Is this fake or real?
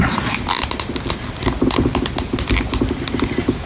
real